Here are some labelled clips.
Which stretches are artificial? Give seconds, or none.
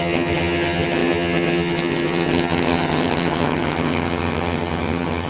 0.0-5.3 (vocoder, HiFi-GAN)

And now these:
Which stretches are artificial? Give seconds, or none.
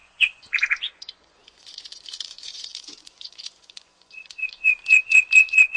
0.0-5.8 (vocoder, Vocos)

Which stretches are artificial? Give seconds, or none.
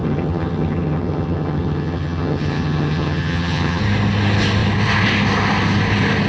0.0-3.8 (vocoder, HiFi-GAN)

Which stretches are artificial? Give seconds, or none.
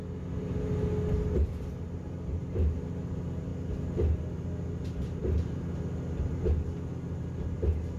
none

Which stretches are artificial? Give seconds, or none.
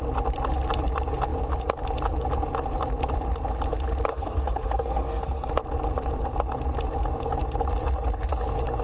4.1-5.5 (codec, SNAC)